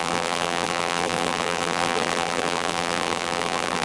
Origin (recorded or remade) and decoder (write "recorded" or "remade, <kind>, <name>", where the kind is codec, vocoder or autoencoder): remade, vocoder, BigVGAN v2